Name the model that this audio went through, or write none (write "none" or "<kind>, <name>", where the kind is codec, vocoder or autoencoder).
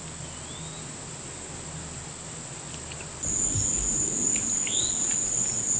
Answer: none